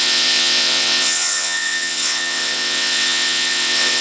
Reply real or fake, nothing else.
fake